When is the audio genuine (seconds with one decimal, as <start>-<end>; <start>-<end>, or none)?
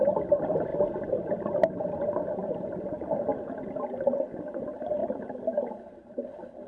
0.7-2.9; 3.3-4.5